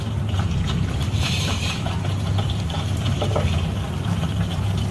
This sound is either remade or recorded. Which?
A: remade